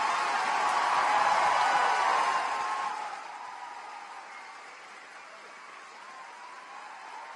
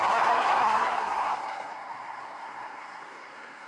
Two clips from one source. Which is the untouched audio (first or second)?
first